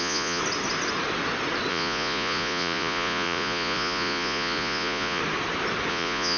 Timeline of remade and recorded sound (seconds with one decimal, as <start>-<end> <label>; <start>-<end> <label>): 0.0-0.4 remade; 0.4-1.7 recorded; 1.7-5.2 remade; 5.2-5.9 recorded; 5.9-6.4 remade